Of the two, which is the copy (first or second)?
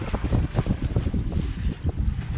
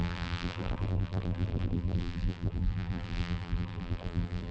second